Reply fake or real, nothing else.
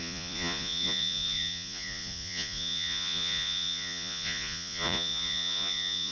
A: fake